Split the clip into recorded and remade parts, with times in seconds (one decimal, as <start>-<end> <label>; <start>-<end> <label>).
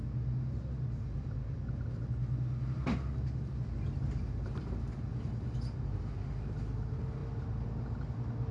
0.0-8.5 recorded